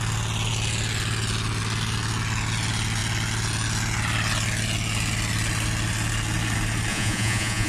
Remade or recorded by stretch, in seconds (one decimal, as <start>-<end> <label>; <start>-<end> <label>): 0.0-6.9 recorded; 6.9-7.7 remade